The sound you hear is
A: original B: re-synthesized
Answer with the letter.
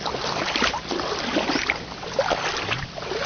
A